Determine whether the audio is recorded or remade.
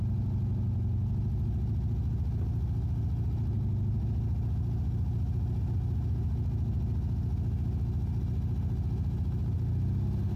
recorded